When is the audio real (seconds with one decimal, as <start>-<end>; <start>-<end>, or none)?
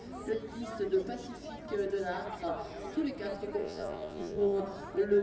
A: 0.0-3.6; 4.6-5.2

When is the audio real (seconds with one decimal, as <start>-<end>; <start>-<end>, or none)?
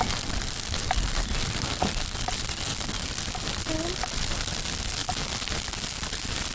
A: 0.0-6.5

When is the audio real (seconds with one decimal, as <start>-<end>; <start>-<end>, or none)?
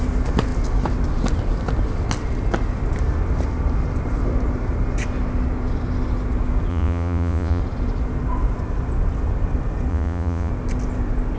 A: 0.0-6.7; 7.6-9.9; 10.5-11.4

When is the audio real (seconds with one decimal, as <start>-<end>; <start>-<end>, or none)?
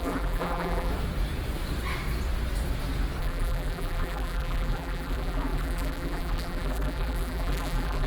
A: 0.9-3.2